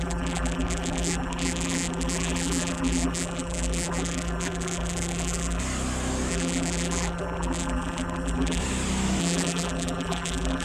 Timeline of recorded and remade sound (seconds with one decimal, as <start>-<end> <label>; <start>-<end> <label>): 0.0-5.6 remade; 5.6-6.3 recorded; 6.3-8.6 remade; 8.6-9.2 recorded; 9.2-10.6 remade